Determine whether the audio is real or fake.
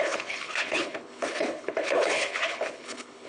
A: fake